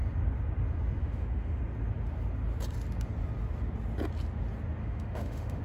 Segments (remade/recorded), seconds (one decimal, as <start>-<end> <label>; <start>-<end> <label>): 0.0-1.0 recorded; 1.0-1.6 remade; 1.6-4.8 recorded; 4.8-5.6 remade